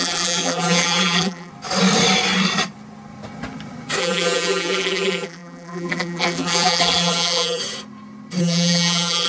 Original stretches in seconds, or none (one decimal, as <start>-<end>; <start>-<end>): 1.5-4.0; 7.6-8.4